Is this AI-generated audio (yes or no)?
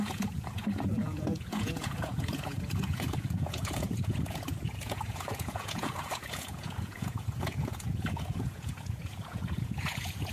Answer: yes